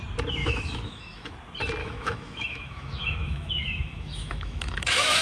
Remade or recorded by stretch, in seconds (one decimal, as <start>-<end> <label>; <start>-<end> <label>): 0.0-0.4 recorded; 0.4-1.3 remade; 1.3-1.8 recorded; 1.8-5.2 remade